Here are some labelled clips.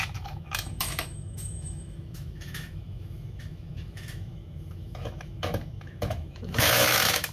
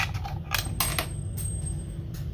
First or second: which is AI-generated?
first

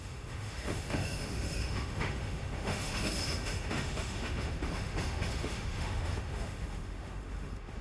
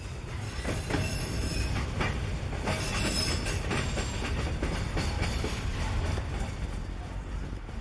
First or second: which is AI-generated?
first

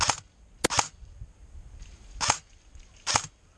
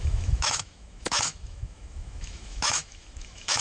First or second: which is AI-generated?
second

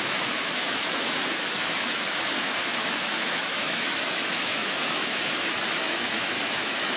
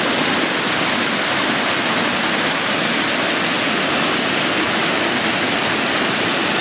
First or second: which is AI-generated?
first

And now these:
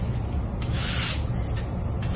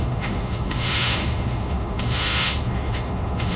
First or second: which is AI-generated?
second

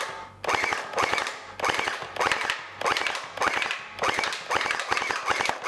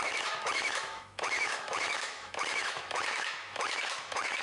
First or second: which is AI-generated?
second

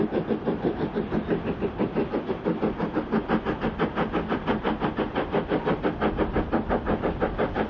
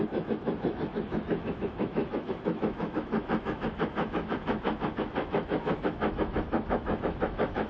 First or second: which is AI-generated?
second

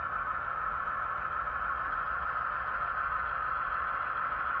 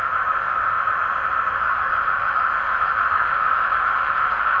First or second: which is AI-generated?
second